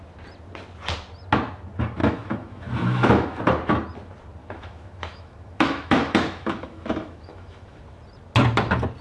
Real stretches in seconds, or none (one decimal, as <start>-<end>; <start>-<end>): 0.0-2.0; 3.4-4.4; 7.8-9.0